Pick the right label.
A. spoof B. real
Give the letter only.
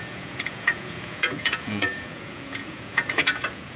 A